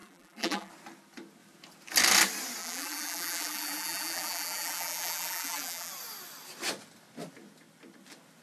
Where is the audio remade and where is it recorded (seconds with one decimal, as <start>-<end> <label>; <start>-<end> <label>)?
0.0-0.7 remade; 0.7-2.6 recorded; 2.6-5.9 remade; 5.9-8.4 recorded